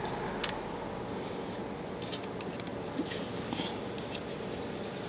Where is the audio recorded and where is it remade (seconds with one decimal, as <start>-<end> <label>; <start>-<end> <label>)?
0.0-5.1 recorded